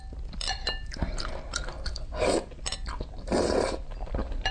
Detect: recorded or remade recorded